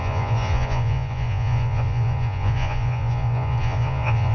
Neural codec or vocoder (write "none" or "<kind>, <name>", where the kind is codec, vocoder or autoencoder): vocoder, Vocos